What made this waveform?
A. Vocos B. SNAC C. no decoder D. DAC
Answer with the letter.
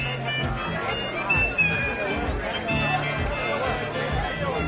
C